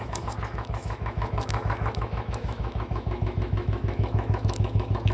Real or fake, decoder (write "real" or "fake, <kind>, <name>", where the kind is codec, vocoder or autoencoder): fake, autoencoder, DAC-VAE